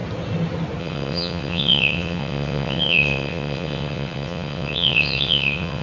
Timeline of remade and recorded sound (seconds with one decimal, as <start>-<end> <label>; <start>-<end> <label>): 0.0-0.8 recorded; 0.8-5.8 remade